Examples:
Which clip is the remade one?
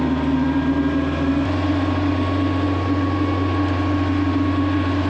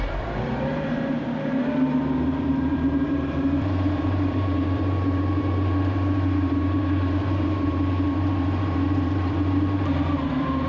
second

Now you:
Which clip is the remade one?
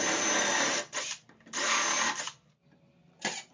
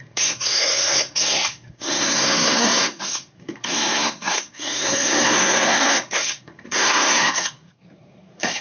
second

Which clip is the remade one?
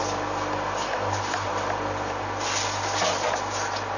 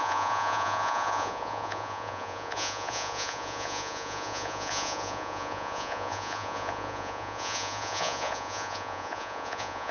second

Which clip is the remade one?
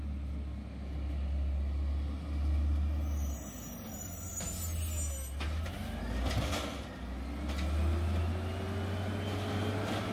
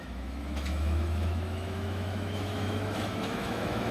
second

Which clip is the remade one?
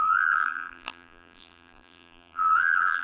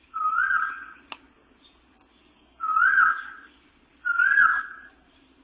first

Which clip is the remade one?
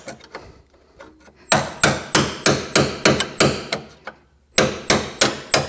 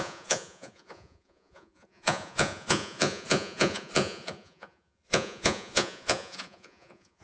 second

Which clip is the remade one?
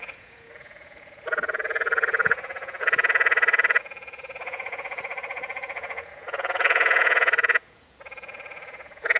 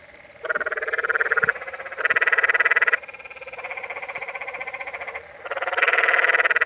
first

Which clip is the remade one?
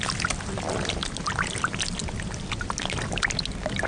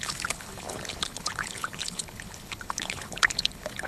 second